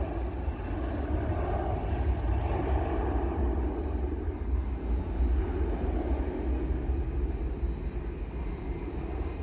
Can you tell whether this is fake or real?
real